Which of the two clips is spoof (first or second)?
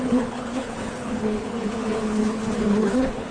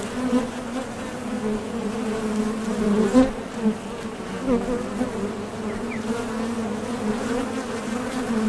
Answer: first